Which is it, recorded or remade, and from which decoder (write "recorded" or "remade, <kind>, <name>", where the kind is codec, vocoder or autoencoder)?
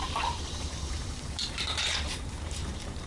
remade, vocoder, BigVGAN v2